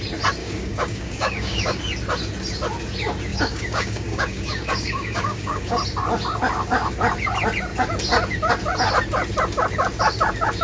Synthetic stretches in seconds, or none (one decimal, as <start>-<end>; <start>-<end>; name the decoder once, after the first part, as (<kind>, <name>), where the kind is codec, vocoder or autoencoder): 0.4-1.8 (codec, DAC); 3.3-5.8